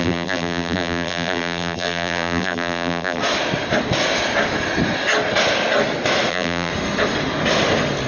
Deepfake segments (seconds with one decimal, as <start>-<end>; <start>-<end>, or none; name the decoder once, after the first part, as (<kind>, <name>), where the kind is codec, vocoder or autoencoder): 0.0-3.2 (vocoder, BigVGAN v2); 6.3-6.7